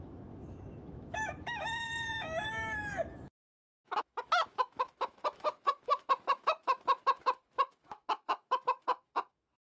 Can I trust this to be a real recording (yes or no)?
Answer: no